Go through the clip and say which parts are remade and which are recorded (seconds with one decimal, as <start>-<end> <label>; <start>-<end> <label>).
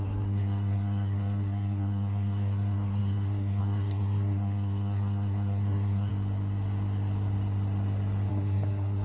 0.0-6.1 remade; 6.1-8.3 recorded; 8.3-9.0 remade